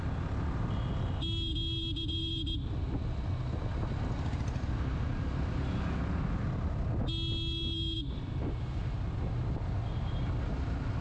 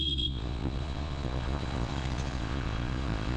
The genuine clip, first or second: first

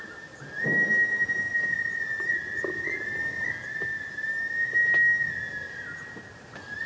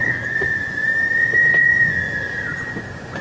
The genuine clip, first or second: first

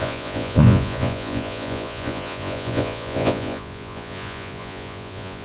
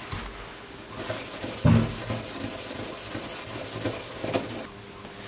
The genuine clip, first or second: second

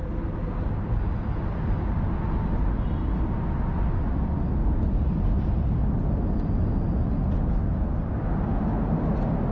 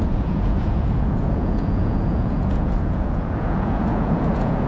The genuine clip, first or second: first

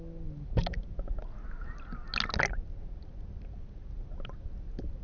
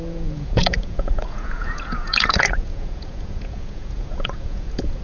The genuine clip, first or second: first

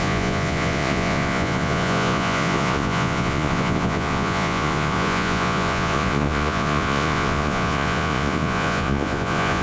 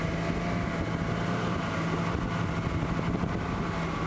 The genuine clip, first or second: second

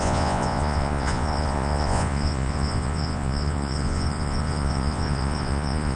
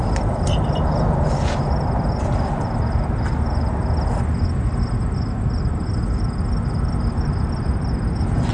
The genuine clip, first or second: second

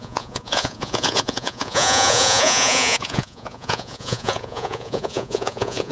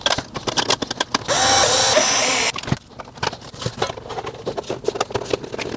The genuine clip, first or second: second